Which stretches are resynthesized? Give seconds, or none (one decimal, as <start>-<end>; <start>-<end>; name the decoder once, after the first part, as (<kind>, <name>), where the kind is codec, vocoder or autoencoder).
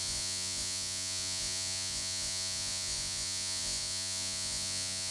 0.0-5.1 (vocoder, Vocos)